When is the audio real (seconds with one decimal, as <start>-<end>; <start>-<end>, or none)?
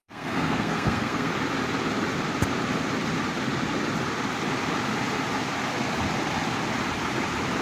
1.3-7.6